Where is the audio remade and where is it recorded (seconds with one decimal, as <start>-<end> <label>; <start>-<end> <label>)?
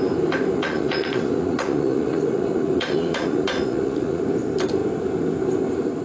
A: 0.0-0.6 recorded; 0.6-4.2 remade; 4.2-6.0 recorded